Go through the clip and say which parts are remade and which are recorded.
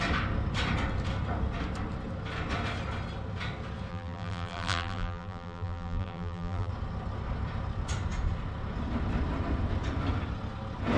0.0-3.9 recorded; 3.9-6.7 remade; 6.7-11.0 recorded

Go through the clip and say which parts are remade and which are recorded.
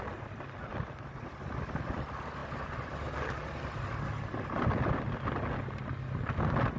0.0-6.8 recorded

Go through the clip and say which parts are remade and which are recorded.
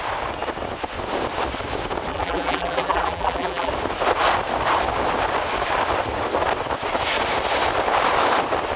0.0-2.1 recorded; 2.1-3.7 remade; 3.7-8.8 recorded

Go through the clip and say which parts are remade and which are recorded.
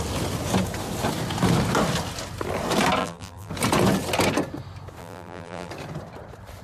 0.0-3.0 recorded; 3.0-3.5 remade; 3.5-5.0 recorded; 5.0-5.7 remade; 5.7-6.6 recorded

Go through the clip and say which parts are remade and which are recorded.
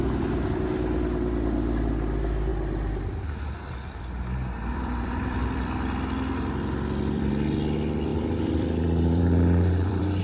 0.0-2.5 recorded; 2.5-7.3 remade; 7.3-8.1 recorded; 8.1-10.2 remade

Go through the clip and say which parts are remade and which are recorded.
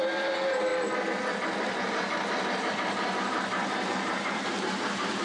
0.0-0.7 remade; 0.7-2.7 recorded; 2.7-5.2 remade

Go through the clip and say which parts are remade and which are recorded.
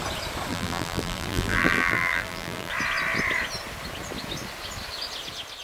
0.0-0.5 recorded; 0.5-2.7 remade; 2.7-5.6 recorded